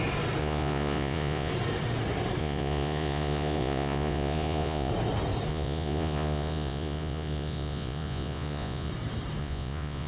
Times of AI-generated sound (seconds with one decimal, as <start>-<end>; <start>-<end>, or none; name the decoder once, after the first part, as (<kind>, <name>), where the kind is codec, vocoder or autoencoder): 0.4-1.5 (vocoder, Vocos); 2.4-4.9; 5.5-8.9; 9.4-10.1